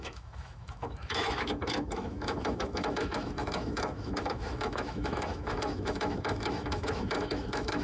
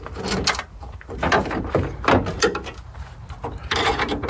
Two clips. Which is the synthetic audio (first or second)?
first